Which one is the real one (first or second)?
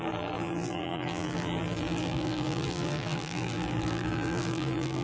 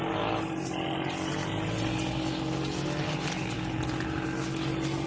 second